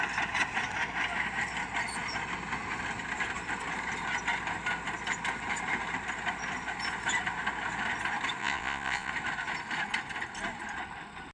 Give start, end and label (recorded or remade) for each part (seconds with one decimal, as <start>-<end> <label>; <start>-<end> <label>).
0.0-8.4 recorded; 8.4-9.1 remade; 9.1-11.3 recorded